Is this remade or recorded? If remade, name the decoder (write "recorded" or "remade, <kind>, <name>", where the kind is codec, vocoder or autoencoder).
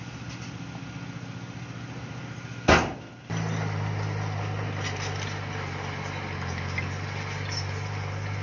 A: recorded